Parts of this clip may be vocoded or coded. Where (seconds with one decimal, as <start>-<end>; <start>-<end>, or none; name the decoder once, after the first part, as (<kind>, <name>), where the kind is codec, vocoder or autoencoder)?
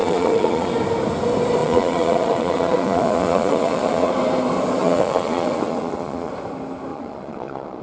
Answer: 0.0-0.7 (vocoder, Vocos); 1.6-4.1; 4.8-6.3; 6.9-7.8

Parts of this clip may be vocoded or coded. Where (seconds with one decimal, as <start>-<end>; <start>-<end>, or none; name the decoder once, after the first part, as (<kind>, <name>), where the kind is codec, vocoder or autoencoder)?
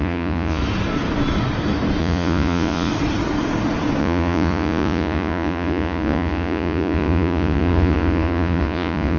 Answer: 0.0-0.6 (vocoder, Vocos); 2.0-2.9; 4.0-9.2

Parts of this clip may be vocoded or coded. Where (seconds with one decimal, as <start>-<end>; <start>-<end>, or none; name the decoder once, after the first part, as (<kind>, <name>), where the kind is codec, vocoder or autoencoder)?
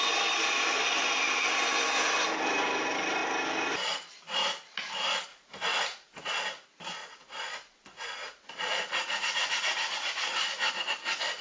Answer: 5.3-6.3 (vocoder, Vocos); 7.0-10.7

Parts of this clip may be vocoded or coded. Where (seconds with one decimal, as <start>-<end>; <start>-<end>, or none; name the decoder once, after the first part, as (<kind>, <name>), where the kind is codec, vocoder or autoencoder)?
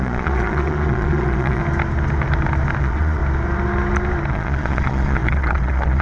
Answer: 0.0-1.6 (vocoder, Vocos); 2.8-3.2; 4.3-6.0